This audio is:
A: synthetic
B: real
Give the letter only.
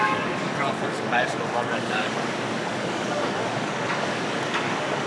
A